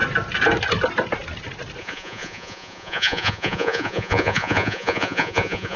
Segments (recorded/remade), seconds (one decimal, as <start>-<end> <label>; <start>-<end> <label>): 0.0-1.8 recorded; 1.8-5.8 remade